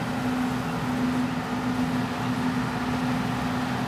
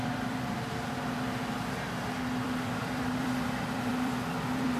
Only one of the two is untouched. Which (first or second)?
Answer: first